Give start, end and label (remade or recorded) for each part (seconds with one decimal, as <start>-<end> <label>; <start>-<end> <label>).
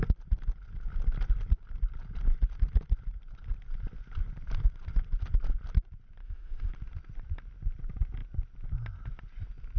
0.0-6.2 recorded; 6.2-6.7 remade; 6.7-9.8 recorded